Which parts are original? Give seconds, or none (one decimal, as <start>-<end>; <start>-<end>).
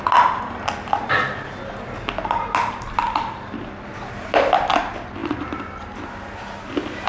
0.0-7.1